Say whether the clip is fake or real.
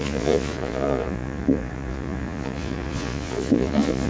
fake